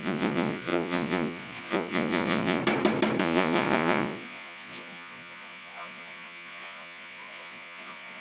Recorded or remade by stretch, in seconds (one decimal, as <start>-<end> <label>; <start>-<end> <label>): 0.0-2.6 remade; 2.6-3.2 recorded; 3.2-8.2 remade